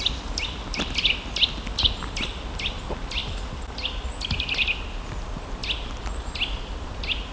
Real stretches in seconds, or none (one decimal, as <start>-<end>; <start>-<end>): 0.0-7.3